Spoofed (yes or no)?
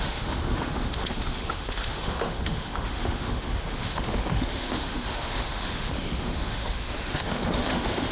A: yes